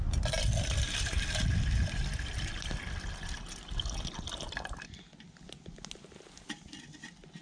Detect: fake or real real